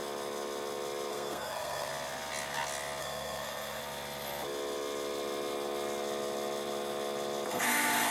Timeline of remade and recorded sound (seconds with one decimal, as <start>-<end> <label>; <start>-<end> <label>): 0.0-1.1 recorded; 1.1-1.9 remade; 1.9-3.0 recorded; 3.0-3.8 remade; 3.8-7.5 recorded; 7.5-8.1 remade

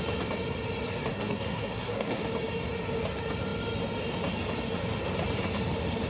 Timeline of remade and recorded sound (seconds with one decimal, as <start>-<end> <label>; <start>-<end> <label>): 0.0-1.1 recorded; 1.1-2.2 remade; 2.2-6.1 recorded

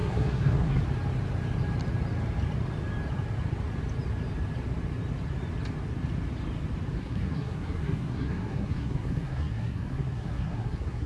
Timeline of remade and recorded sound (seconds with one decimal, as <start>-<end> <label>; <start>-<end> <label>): 0.0-0.8 remade; 0.8-7.0 recorded; 7.0-11.1 remade

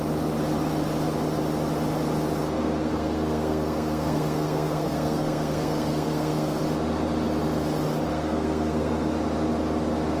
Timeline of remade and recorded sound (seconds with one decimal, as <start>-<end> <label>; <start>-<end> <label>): 0.0-2.4 recorded; 2.4-6.6 remade; 6.6-8.1 recorded; 8.1-9.1 remade; 9.1-10.2 recorded

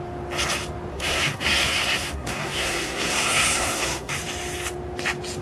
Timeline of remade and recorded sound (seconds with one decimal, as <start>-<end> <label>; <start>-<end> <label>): 0.0-0.9 recorded; 0.9-4.1 remade; 4.1-5.4 recorded

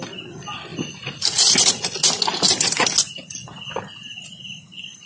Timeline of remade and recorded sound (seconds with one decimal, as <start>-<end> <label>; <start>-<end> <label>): 0.0-5.1 recorded